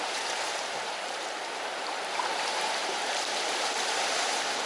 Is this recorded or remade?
remade